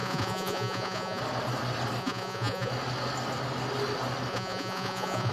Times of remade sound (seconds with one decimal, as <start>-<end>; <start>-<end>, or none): 0.0-1.2; 2.0-2.7; 4.3-5.3